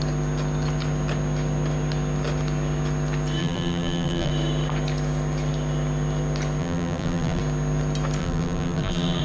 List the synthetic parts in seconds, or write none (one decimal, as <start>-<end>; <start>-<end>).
3.4-4.3; 6.6-7.4; 8.2-9.2